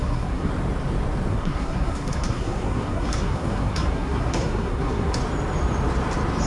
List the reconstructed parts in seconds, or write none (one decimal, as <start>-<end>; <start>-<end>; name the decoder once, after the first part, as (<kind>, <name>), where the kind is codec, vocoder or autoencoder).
0.0-0.5 (codec, SNAC); 1.3-5.2